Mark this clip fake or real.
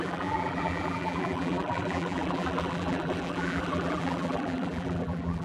fake